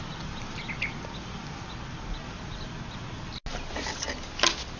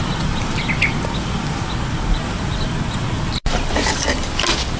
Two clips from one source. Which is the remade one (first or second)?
second